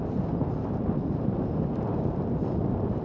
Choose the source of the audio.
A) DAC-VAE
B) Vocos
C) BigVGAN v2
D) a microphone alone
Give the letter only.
D